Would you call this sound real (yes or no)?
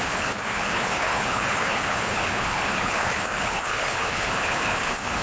no